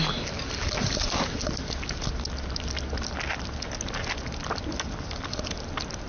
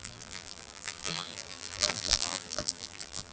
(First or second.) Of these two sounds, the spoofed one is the second